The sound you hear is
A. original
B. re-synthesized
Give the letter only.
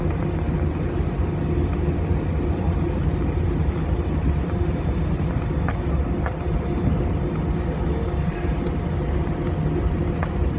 A